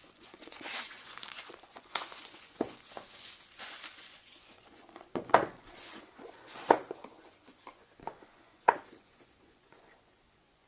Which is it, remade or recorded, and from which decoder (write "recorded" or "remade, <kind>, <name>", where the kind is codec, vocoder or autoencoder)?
remade, vocoder, Vocos